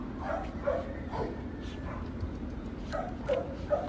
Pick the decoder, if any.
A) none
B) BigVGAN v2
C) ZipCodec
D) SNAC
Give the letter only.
B